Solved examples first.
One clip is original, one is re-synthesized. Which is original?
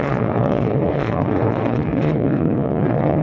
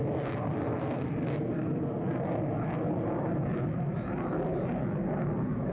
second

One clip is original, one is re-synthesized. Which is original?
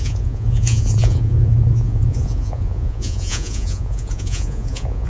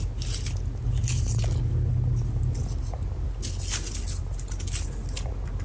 second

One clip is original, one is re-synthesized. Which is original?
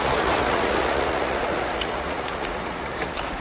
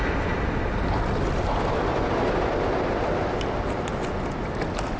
second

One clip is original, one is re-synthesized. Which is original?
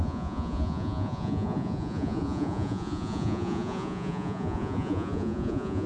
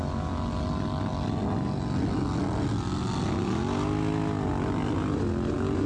second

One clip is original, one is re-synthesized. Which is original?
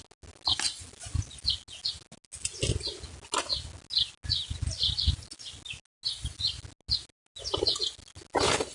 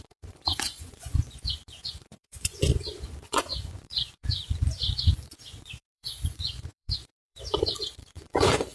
first